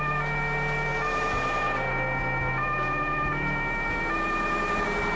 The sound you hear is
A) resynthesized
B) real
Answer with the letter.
B